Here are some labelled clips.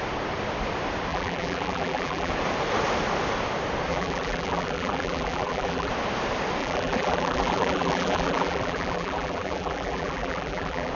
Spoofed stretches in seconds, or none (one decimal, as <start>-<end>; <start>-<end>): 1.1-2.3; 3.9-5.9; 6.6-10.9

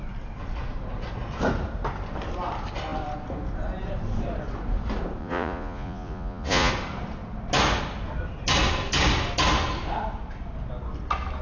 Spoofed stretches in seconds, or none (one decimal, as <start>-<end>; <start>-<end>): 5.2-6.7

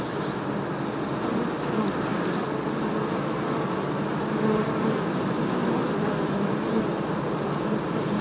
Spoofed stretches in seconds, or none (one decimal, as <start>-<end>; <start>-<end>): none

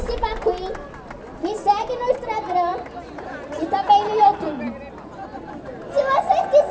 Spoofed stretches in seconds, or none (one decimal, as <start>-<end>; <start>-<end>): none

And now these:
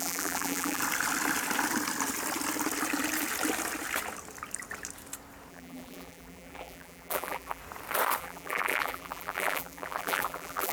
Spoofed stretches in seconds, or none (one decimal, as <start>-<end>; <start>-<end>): 0.0-0.8; 5.5-7.6; 8.2-10.7